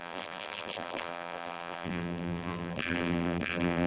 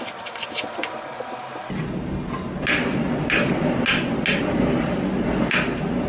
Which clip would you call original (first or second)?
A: second